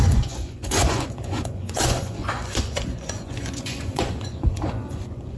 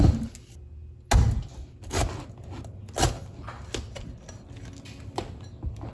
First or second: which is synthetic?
first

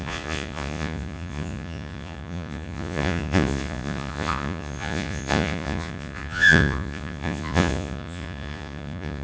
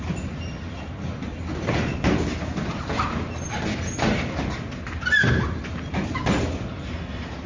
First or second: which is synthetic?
first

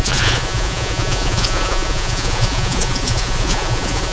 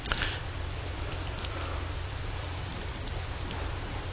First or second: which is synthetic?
first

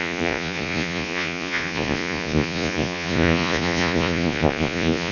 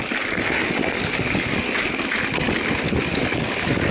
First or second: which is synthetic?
first